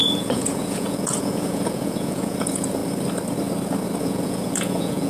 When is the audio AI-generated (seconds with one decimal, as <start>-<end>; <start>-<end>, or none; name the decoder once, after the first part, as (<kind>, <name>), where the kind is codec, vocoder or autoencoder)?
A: 0.0-2.8 (vocoder, Vocos); 4.0-5.1